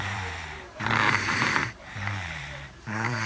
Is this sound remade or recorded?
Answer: remade